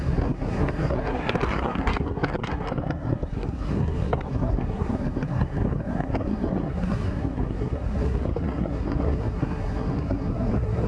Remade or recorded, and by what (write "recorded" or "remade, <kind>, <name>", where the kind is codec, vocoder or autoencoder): remade, codec, SNAC